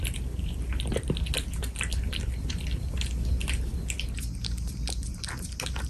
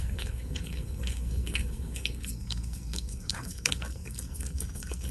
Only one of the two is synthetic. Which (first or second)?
second